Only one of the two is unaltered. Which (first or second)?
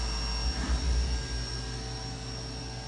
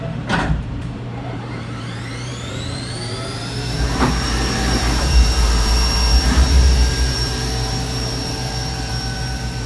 first